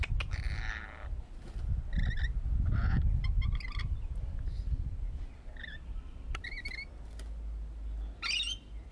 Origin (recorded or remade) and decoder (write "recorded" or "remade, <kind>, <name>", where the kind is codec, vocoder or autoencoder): recorded